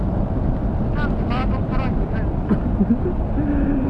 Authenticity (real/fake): real